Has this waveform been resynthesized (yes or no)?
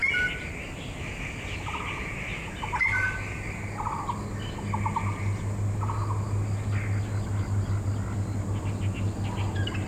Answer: no